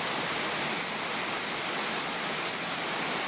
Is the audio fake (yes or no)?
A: no